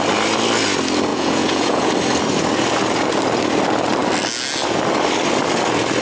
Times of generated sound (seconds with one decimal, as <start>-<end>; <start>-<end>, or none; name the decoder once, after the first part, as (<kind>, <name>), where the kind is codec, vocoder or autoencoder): 1.1-1.9 (vocoder, Vocos)